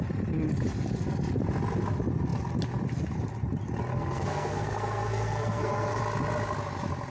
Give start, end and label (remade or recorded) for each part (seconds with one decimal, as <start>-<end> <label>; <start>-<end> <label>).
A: 0.0-3.9 recorded; 3.9-6.0 remade; 6.0-7.1 recorded